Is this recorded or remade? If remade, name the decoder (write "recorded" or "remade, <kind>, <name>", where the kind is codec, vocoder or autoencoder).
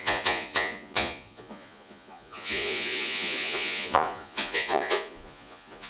remade, vocoder, Vocos